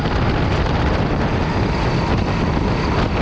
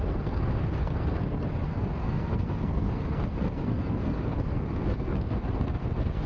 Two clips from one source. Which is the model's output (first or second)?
second